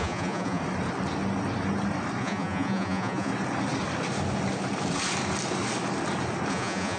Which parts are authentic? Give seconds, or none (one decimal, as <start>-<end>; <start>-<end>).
0.6-2.2; 3.3-6.5